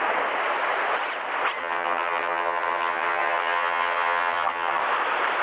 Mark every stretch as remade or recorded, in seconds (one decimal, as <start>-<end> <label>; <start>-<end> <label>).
0.0-1.6 recorded; 1.6-4.8 remade; 4.8-5.4 recorded